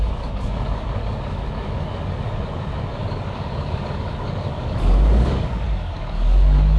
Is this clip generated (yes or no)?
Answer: yes